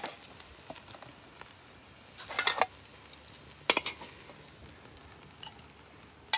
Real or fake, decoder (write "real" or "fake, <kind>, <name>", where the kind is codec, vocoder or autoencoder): real